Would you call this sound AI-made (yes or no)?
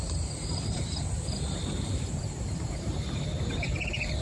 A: yes